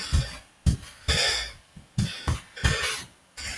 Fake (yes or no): no